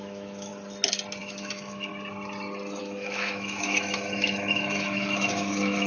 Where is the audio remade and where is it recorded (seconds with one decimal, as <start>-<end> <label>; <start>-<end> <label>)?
0.0-0.5 remade; 0.5-1.2 recorded; 1.2-1.9 remade; 1.9-2.8 recorded; 2.8-5.9 remade